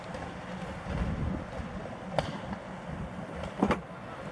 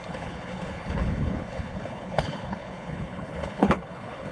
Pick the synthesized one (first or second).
second